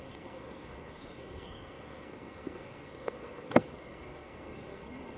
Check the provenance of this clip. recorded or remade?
remade